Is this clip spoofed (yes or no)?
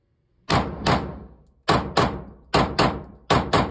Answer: no